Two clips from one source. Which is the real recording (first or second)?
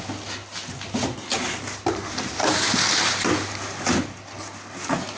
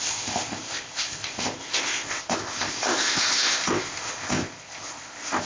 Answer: first